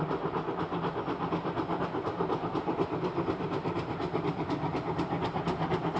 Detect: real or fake real